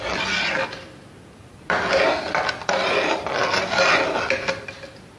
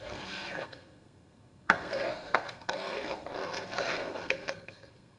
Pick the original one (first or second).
first